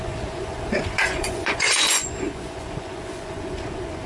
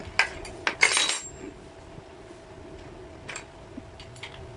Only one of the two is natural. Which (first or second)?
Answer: second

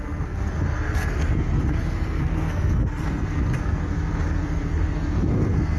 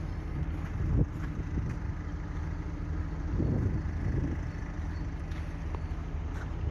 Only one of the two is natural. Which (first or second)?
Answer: second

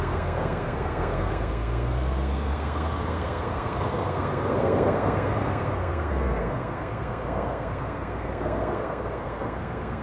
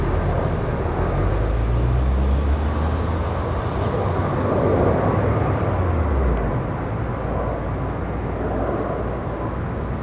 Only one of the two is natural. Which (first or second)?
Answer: second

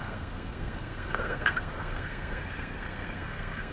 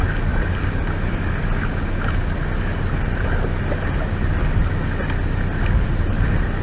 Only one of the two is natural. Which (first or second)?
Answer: second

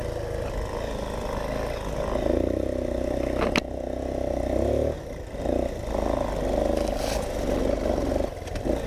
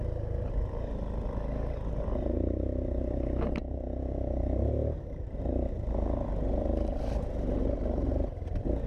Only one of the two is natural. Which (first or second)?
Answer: first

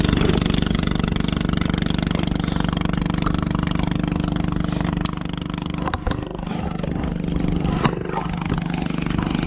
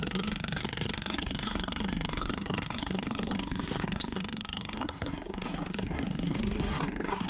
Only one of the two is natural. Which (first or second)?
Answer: first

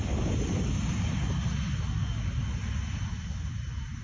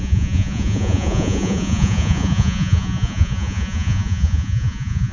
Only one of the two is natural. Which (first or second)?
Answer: first